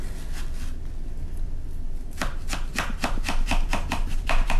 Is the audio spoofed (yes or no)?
no